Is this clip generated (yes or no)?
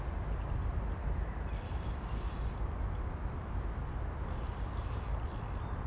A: no